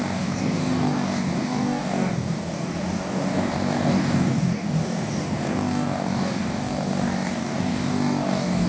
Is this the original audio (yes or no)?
no